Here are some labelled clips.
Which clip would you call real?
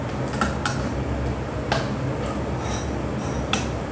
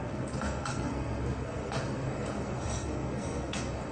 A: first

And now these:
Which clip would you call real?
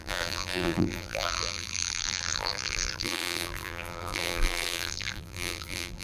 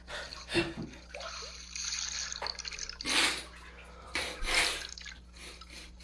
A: second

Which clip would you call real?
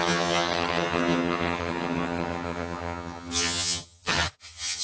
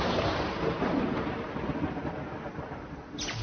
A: second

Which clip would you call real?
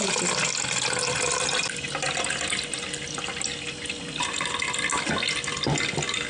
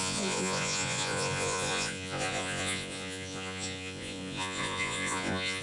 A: first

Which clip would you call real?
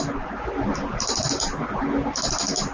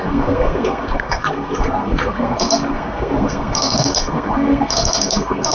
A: first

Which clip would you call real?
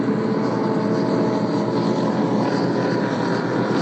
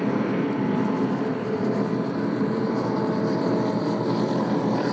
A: first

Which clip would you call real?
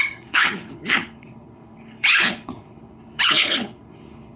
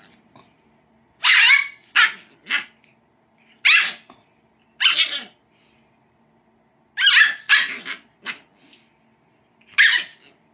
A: second